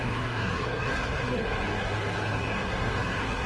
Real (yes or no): no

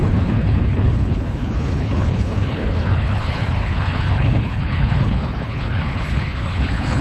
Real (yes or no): no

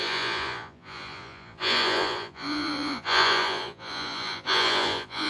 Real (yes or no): no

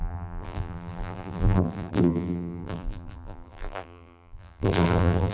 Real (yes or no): no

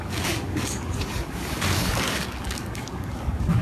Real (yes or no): no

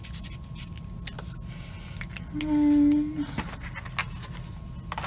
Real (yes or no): yes